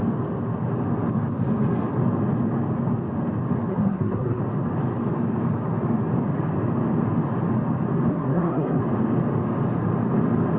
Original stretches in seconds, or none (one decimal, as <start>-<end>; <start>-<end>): 0.0-3.7; 4.4-8.1; 8.8-10.6